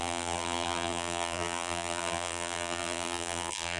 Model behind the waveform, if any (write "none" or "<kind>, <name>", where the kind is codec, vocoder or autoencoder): vocoder, BigVGAN v2